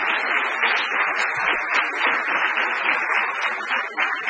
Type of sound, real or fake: real